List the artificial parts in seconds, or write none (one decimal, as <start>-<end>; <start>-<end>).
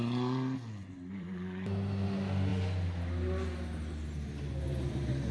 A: none